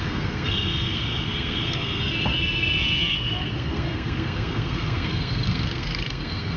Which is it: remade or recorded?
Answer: remade